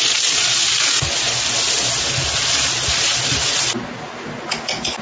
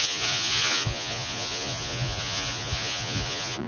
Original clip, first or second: first